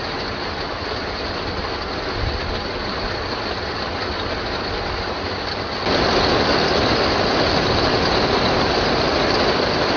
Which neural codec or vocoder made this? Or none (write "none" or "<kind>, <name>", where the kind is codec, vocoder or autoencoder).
none